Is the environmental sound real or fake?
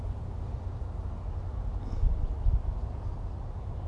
real